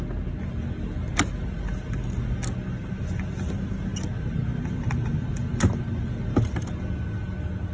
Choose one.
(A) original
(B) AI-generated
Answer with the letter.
A